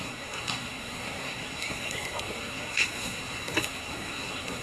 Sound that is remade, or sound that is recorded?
remade